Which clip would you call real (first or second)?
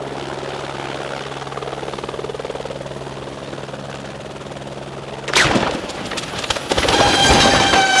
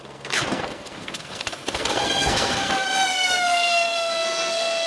first